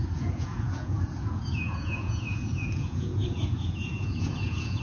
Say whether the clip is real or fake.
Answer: fake